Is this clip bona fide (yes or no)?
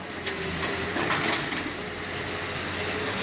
yes